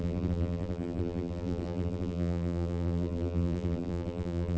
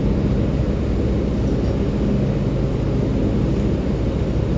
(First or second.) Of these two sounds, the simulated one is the first